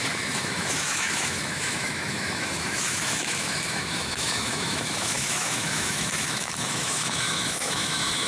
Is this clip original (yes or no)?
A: no